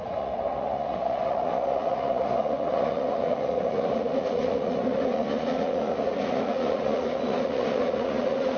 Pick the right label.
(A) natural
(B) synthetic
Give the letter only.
B